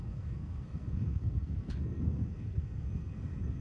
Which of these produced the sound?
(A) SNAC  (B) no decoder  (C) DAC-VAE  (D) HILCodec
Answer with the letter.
A